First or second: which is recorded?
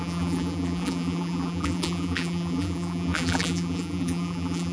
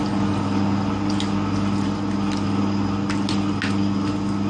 second